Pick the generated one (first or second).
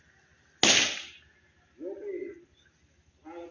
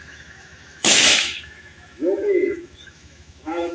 second